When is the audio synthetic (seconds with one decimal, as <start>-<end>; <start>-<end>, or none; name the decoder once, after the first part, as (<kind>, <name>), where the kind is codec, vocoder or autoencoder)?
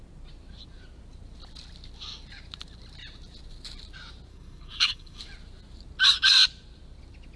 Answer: 4.3-5.2 (codec, DAC)